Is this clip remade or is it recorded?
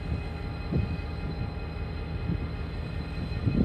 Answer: recorded